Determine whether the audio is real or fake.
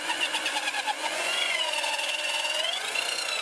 fake